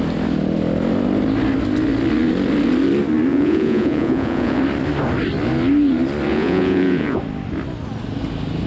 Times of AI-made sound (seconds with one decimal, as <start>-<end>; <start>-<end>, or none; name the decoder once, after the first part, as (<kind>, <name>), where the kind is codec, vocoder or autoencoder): 3.3-4.6 (vocoder, Vocos); 6.3-7.2